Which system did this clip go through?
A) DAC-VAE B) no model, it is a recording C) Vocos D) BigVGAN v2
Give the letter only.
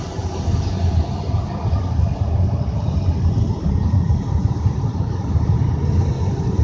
B